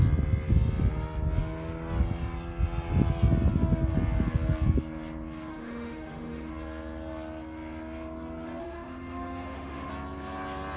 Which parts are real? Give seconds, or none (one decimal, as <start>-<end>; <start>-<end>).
0.0-5.5; 6.5-8.6; 9.9-10.8